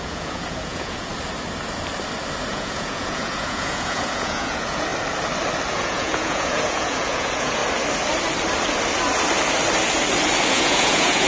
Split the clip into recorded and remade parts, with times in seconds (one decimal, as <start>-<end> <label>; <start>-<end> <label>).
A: 0.0-1.1 remade; 1.1-2.5 recorded; 2.5-4.9 remade; 4.9-5.7 recorded; 5.7-7.6 remade; 7.6-10.5 recorded; 10.5-11.3 remade